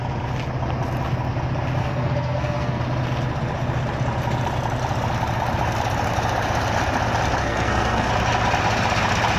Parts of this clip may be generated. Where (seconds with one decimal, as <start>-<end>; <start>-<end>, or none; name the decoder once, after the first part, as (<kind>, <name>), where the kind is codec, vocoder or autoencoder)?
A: 1.8-2.8 (codec, SNAC); 7.4-8.1